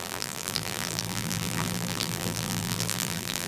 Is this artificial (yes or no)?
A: yes